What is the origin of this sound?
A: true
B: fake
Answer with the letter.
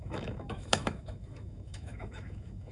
B